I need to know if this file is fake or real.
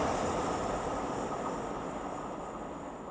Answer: real